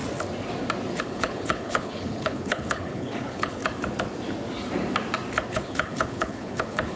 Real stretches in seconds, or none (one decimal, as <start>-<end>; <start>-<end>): 0.0-1.0; 3.6-5.5